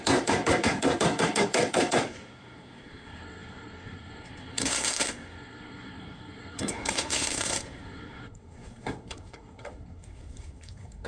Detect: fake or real fake